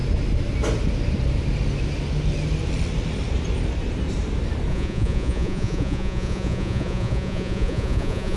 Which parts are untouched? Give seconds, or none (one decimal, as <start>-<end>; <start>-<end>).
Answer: 0.0-4.7